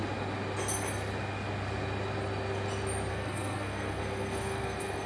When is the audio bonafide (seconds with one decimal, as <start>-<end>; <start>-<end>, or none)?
0.0-3.1